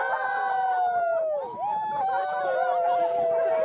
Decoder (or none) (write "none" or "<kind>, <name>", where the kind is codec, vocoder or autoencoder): none